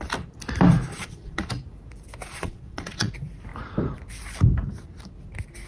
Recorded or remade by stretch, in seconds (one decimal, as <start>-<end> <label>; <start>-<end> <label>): 0.0-0.9 recorded; 0.9-1.5 remade; 1.5-2.3 recorded; 2.3-3.1 remade; 3.1-5.7 recorded